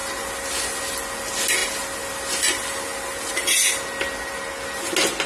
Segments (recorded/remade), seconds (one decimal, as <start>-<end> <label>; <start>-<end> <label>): 0.0-5.3 recorded